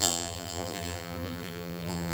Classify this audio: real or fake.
fake